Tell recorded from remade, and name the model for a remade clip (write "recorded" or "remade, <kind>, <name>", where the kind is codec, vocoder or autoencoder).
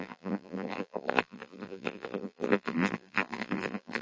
remade, vocoder, BigVGAN v2